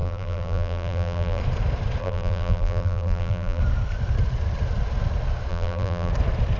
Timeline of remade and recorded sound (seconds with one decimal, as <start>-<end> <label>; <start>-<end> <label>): 0.0-1.4 remade; 1.4-2.0 recorded; 2.0-3.6 remade; 3.6-5.5 recorded; 5.5-6.1 remade; 6.1-6.6 recorded